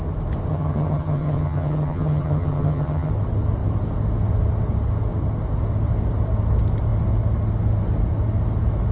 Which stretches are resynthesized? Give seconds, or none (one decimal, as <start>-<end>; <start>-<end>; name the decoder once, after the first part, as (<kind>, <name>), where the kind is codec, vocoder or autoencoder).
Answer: 0.5-3.1 (vocoder, HiFi-GAN)

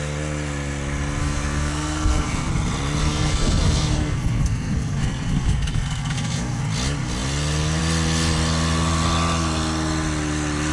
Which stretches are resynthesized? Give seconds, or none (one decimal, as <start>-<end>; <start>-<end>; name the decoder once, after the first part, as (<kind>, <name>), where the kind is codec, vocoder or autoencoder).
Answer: 1.2-2.5 (codec, SNAC); 3.0-6.6

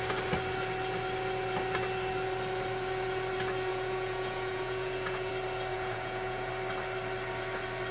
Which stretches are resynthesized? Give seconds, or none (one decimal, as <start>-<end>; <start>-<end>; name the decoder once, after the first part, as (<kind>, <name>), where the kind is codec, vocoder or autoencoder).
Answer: 3.7-5.3 (vocoder, Vocos); 5.7-6.5

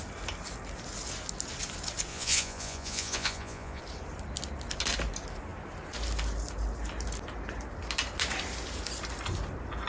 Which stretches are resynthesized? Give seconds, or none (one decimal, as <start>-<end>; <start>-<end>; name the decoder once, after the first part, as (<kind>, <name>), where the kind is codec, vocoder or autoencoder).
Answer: 2.1-3.8 (vocoder, Vocos)

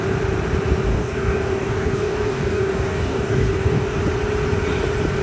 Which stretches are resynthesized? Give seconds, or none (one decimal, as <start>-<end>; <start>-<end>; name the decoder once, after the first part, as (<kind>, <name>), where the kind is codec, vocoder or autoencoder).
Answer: 0.9-4.0 (codec, DAC)

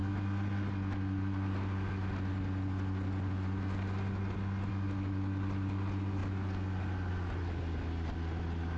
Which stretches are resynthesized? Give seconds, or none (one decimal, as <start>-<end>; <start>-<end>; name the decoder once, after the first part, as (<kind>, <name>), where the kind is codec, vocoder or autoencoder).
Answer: none

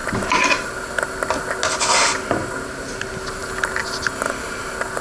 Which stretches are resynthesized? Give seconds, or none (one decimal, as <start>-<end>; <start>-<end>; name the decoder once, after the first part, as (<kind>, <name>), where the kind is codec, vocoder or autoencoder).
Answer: none

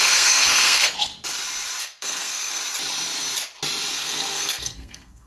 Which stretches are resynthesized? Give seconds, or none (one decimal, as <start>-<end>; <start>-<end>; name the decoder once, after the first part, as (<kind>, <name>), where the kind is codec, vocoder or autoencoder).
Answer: 0.0-1.1 (codec, SNAC); 1.8-2.6; 3.9-5.3